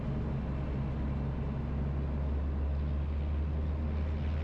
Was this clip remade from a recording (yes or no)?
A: no